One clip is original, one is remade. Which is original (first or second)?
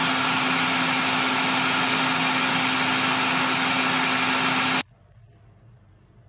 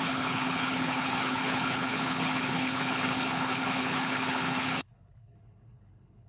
first